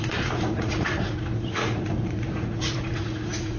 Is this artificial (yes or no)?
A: yes